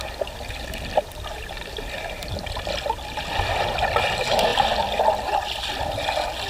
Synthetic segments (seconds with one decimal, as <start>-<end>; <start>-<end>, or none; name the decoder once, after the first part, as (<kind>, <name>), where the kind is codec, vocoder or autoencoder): none